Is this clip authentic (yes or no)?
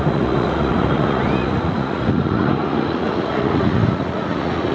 no